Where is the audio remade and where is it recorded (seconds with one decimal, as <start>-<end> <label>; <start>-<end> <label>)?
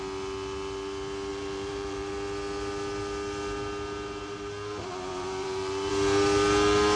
0.0-1.3 recorded; 1.3-2.1 remade; 2.1-5.1 recorded; 5.1-5.9 remade; 5.9-7.0 recorded